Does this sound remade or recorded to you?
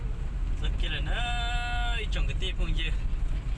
recorded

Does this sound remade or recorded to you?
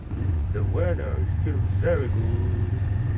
remade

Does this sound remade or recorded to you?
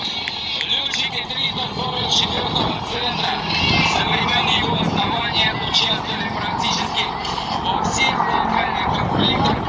recorded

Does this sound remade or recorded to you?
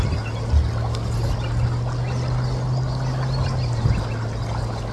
recorded